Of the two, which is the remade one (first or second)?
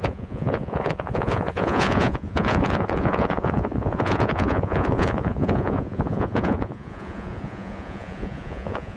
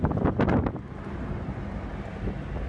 first